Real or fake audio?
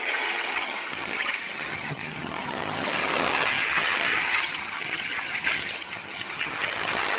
fake